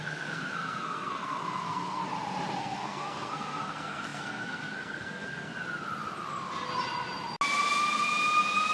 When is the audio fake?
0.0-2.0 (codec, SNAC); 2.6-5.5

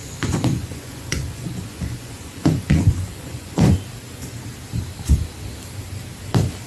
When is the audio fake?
0.0-3.7 (vocoder, Vocos)

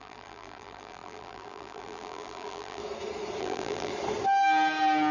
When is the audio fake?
0.0-2.8 (vocoder, BigVGAN v2); 3.4-3.9

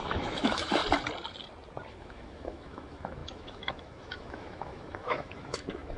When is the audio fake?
0.0-0.8 (autoencoder, DAC-VAE); 1.9-6.0

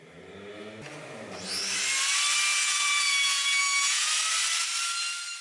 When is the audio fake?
2.5-4.1 (vocoder, Vocos)

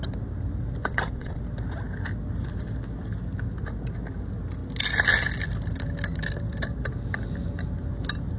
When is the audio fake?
0.8-1.4 (vocoder, WaveNeXt)

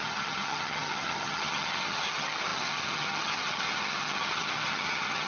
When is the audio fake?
0.0-5.3 (vocoder, HiFi-GAN)